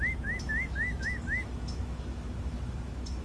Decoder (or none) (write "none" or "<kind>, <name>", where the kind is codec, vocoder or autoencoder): autoencoder, DAC-VAE